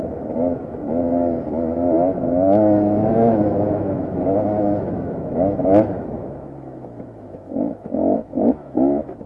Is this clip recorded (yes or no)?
no